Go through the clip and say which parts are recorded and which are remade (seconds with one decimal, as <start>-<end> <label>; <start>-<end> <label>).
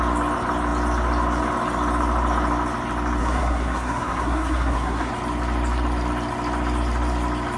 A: 0.0-3.2 recorded; 3.2-5.1 remade; 5.1-7.6 recorded